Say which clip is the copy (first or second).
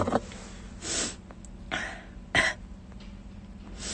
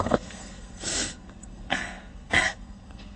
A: second